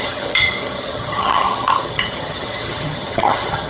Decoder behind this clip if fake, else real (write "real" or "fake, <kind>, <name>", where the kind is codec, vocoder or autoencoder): fake, vocoder, HiFi-GAN